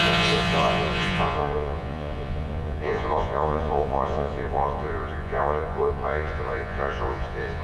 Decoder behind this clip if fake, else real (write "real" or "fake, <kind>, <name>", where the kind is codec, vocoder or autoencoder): fake, vocoder, Vocos